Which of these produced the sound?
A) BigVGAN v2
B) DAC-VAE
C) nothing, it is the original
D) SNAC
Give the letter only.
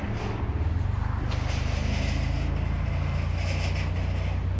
C